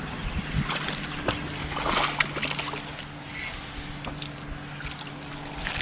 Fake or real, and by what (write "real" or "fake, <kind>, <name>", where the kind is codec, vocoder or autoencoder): real